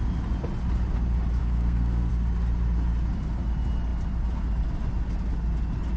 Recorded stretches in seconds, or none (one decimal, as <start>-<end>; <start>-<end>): 0.0-1.4; 2.1-6.0